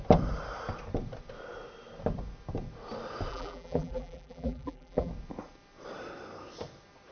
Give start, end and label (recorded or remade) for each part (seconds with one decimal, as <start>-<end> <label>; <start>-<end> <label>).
0.0-3.3 recorded; 3.3-5.1 remade; 5.1-7.1 recorded